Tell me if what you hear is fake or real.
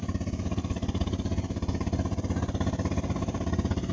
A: real